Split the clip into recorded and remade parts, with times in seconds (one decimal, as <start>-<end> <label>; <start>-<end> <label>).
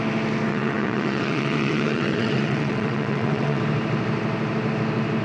0.0-0.5 recorded; 0.5-3.6 remade; 3.6-5.2 recorded